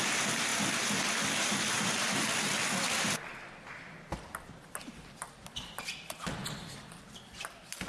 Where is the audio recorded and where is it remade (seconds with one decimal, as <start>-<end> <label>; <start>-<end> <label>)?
0.0-7.9 recorded